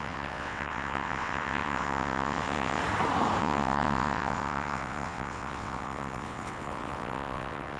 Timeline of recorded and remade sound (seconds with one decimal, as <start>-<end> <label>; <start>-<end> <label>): 0.0-2.8 remade; 2.8-3.4 recorded; 3.4-7.8 remade